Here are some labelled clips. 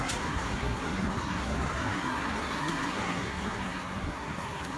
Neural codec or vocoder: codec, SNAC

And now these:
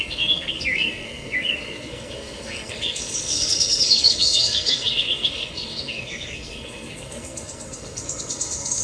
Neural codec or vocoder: codec, SNAC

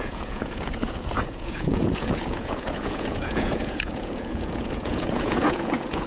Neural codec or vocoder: vocoder, Vocos